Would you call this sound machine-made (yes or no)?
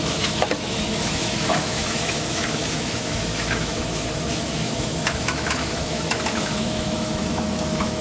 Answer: yes